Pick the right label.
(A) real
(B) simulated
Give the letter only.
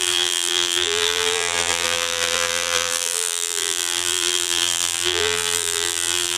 B